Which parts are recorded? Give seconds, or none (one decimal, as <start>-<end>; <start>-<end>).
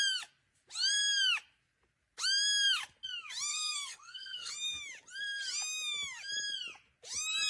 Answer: 0.0-3.5; 4.5-7.5